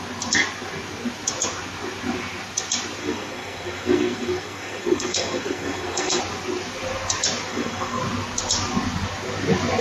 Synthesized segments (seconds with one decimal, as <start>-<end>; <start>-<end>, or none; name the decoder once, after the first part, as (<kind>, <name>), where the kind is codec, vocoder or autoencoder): 3.0-6.2 (codec, SNAC); 7.5-8.0